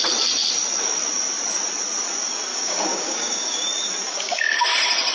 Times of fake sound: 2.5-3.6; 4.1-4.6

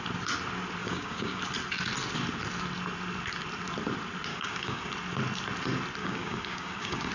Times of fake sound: 0.8-1.4; 4.3-4.9; 6.0-7.1

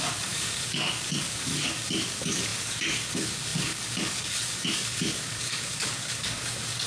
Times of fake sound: 0.0-6.9

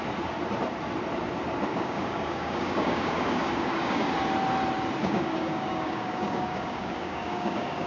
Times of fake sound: 1.7-4.1; 5.0-7.9

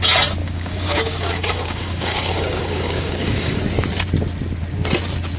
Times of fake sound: 0.4-3.6

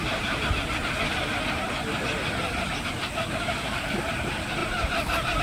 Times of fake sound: 3.0-4.1

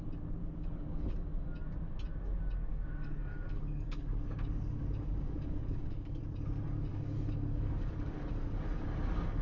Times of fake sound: 0.4-1.1; 2.7-6.2; 6.9-8.2